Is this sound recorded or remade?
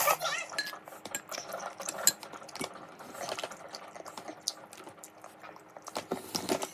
recorded